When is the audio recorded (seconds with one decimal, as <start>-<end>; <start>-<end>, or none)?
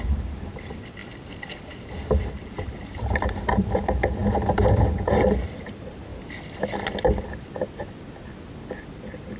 1.0-1.6; 4.2-5.1; 6.1-8.7